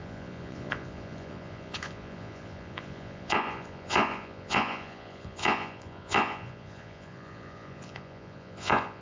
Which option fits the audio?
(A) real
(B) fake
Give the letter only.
B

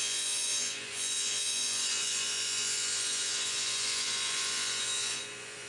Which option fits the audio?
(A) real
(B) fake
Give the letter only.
B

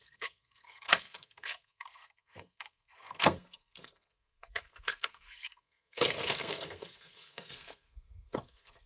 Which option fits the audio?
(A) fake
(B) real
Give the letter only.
A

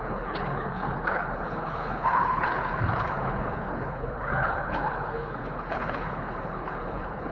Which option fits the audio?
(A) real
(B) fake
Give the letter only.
B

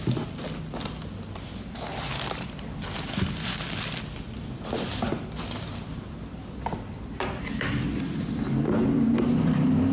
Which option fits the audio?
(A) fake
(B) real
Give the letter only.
A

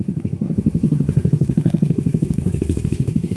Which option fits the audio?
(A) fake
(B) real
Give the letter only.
A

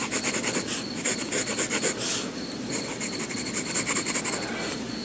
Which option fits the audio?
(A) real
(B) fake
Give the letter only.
A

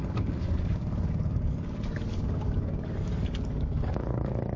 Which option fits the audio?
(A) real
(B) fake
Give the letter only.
B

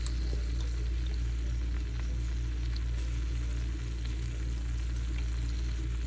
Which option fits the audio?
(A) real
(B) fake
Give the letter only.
A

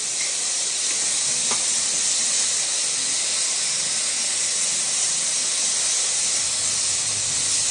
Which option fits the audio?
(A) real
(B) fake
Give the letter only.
A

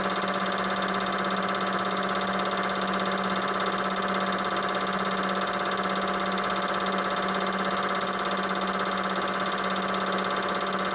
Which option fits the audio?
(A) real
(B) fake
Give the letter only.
A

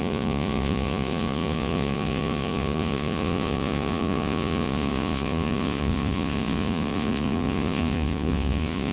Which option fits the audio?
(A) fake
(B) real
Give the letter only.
A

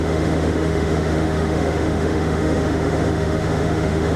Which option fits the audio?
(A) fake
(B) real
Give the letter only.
A